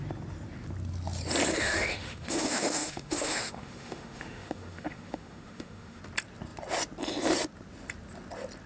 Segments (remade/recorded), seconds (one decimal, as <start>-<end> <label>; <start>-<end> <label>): 0.0-1.5 recorded; 1.5-6.0 remade; 6.0-8.7 recorded